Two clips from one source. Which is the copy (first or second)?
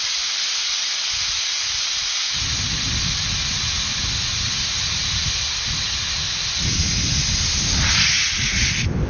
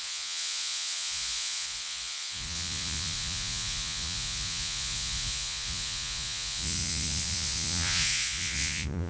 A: second